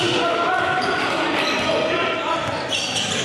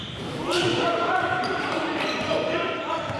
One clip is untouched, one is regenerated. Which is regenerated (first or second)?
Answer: second